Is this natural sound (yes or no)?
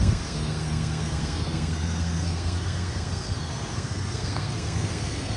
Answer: no